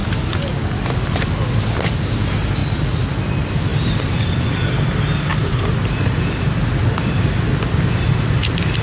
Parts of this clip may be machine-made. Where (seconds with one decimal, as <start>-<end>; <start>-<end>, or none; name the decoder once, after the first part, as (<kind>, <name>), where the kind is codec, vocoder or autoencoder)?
0.0-0.5 (vocoder, BigVGAN v2); 2.6-3.1; 3.7-4.3; 5.3-6.6